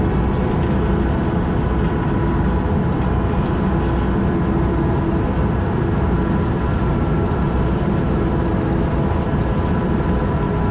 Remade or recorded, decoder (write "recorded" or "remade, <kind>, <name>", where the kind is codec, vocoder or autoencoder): recorded